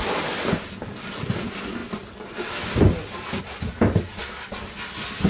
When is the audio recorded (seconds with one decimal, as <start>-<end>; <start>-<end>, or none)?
0.0-5.3